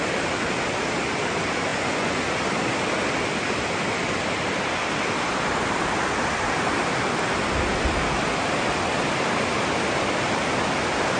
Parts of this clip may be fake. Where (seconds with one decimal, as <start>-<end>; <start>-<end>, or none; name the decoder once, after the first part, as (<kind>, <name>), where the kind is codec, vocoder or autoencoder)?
1.7-2.2 (vocoder, Vocos)